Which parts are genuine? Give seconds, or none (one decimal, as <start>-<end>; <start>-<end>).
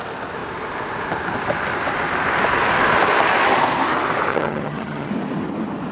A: 0.0-4.3; 5.1-5.9